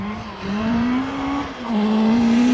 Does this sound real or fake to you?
fake